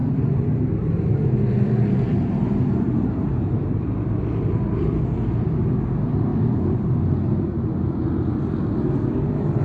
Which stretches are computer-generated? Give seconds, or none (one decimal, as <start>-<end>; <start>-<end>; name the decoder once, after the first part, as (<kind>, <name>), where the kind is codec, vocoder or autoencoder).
0.0-5.0 (vocoder, BigVGAN v2)